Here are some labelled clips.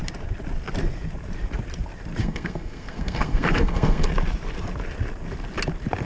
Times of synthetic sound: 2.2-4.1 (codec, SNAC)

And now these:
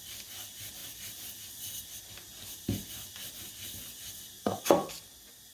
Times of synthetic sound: 4.4-4.9 (codec, SNAC)

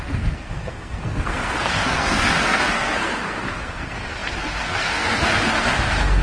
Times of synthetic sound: 0.0-6.2 (codec, SNAC)